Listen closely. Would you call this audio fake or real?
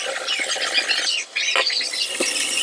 real